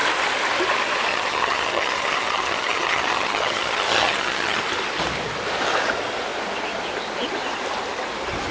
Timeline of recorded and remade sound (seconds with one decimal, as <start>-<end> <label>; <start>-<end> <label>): 0.0-1.1 recorded; 1.1-4.6 remade; 4.6-8.5 recorded